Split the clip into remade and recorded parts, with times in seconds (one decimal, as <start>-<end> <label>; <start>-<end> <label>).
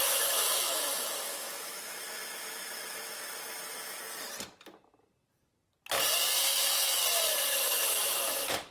0.0-4.0 remade; 4.0-6.4 recorded; 6.4-7.0 remade; 7.0-7.5 recorded; 7.5-8.7 remade